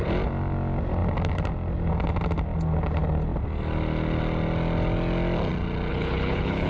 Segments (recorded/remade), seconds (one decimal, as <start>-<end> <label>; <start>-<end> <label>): 0.0-5.9 recorded; 5.9-6.7 remade